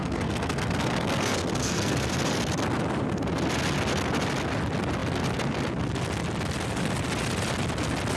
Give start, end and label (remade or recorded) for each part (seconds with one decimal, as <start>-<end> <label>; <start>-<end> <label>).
0.0-2.1 remade; 2.1-8.2 recorded